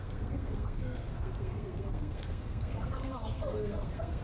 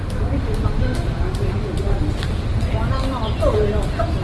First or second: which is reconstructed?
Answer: first